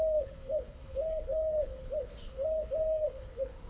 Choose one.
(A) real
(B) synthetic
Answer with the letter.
B